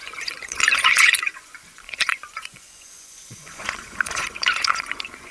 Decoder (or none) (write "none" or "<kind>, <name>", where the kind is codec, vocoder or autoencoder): vocoder, Vocos